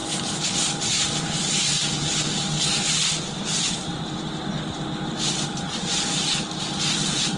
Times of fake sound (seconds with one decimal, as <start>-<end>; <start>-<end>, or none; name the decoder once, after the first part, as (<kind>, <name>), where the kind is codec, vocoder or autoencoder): 3.0-4.4 (vocoder, BigVGAN v2)